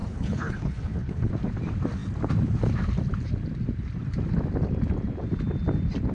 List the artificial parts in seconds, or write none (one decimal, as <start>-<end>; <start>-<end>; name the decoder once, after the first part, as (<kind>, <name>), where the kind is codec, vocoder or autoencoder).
0.0-1.3 (codec, HILCodec)